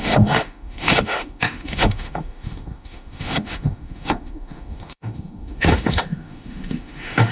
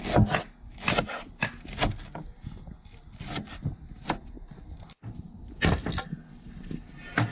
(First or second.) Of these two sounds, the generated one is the first